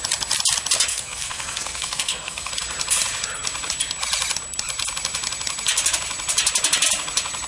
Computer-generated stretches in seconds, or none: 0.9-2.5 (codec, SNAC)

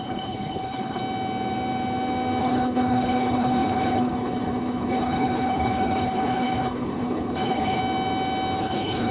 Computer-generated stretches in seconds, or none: 0.0-1.0 (codec, HILCodec); 2.4-7.8; 8.6-9.1

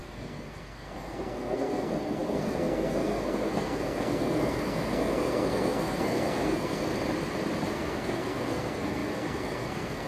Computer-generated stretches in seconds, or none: 0.0-6.9 (codec, SNAC); 7.7-10.1

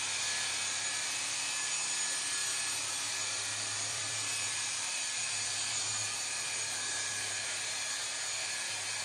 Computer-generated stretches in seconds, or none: 2.4-5.3 (vocoder, BigVGAN v2)